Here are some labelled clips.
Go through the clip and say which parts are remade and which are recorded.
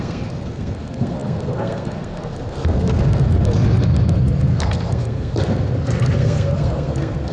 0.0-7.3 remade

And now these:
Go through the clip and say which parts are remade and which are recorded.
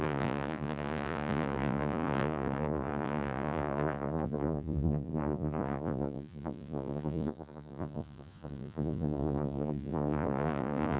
0.0-11.0 remade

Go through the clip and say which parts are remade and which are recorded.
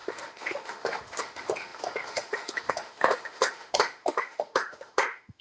0.0-5.4 remade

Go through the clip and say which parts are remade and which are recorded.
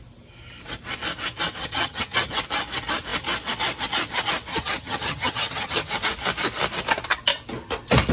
0.0-1.6 recorded; 1.6-2.3 remade; 2.3-4.5 recorded; 4.5-5.9 remade; 5.9-8.1 recorded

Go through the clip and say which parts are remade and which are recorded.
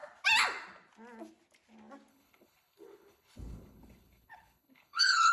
0.0-2.1 recorded; 2.1-5.3 remade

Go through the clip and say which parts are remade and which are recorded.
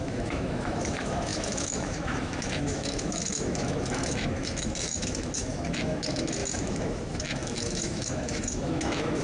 0.0-9.2 remade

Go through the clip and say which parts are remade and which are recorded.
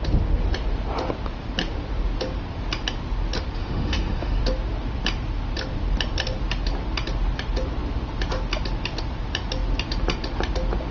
0.0-3.6 recorded; 3.6-4.4 remade; 4.4-10.9 recorded